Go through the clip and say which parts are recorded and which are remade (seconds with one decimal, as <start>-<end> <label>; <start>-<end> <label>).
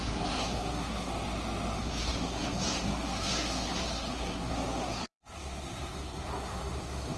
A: 0.0-1.1 remade; 1.1-1.8 recorded; 1.8-7.2 remade